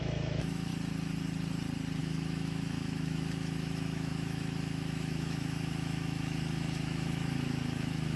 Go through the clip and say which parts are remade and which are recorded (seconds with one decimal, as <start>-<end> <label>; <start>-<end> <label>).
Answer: 0.0-0.7 remade; 0.7-2.0 recorded; 2.0-8.2 remade